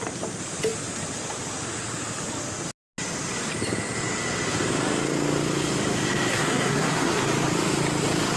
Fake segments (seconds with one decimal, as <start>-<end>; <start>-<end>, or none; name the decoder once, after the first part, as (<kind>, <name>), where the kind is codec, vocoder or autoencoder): 6.3-7.1 (codec, SNAC)